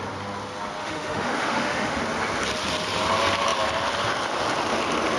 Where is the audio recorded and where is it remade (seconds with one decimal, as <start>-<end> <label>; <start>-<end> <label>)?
0.0-0.8 recorded; 0.8-2.0 remade; 2.0-5.2 recorded